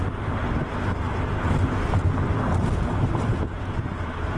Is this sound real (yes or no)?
yes